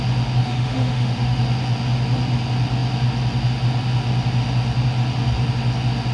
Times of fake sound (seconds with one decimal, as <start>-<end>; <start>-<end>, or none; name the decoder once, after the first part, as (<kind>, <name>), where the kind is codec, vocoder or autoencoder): 0.4-1.4 (autoencoder, DAC-VAE)

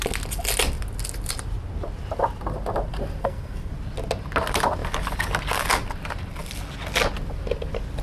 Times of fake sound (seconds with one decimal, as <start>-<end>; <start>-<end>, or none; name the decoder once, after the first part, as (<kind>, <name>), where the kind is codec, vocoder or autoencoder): 3.2-3.7 (codec, SNAC)

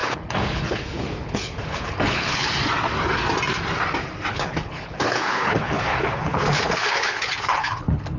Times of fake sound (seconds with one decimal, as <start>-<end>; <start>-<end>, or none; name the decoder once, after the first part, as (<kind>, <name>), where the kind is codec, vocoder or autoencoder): 0.0-2.5 (codec, HILCodec); 4.3-8.2

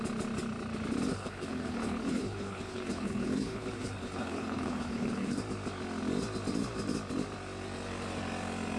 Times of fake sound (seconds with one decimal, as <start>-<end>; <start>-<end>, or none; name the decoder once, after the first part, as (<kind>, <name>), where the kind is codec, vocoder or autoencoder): 1.1-5.4 (codec, HILCodec)

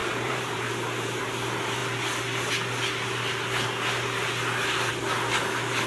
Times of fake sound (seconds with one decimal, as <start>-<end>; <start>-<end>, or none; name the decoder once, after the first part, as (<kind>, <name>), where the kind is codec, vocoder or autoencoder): 0.0-1.2 (vocoder, BigVGAN v2)

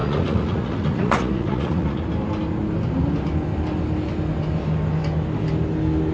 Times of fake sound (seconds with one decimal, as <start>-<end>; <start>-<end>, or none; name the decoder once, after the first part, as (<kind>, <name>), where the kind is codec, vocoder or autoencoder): 0.0-2.0 (vocoder, Vocos)

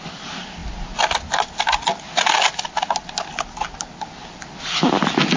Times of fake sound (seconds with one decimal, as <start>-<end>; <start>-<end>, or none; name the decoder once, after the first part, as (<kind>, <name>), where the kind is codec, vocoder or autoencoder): none